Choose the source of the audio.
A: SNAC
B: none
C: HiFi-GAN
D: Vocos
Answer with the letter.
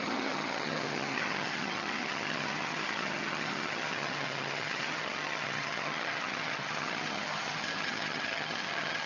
C